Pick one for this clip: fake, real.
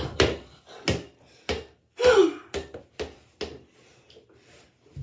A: real